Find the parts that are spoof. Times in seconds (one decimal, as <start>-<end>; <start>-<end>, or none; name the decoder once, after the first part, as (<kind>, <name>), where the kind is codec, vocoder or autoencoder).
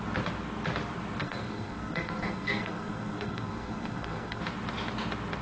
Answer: 1.2-4.4 (codec, SNAC)